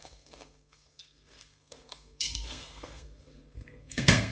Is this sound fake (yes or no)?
yes